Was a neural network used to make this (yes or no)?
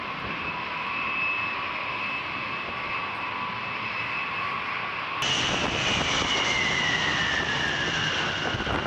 no